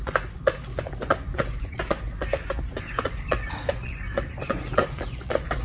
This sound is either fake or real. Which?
fake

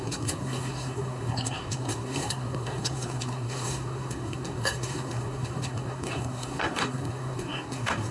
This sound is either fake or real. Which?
fake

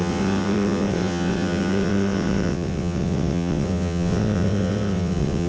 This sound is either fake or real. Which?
fake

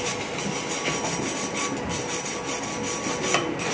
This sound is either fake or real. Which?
real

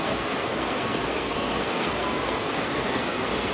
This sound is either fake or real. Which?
fake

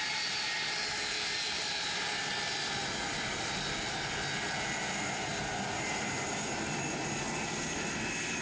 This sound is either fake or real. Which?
fake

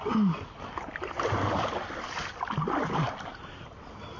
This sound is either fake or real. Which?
real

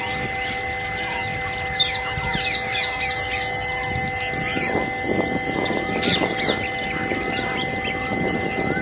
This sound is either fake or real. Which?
real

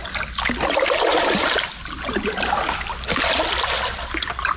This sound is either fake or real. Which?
real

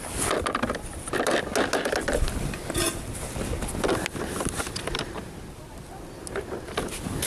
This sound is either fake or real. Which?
real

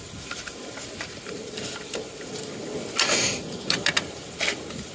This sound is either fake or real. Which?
real